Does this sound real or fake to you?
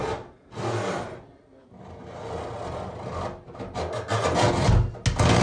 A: real